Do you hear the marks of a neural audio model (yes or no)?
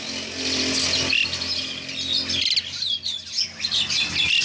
no